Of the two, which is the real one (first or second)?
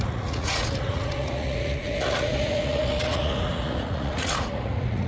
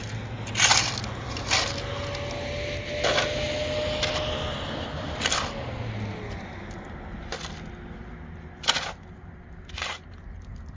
second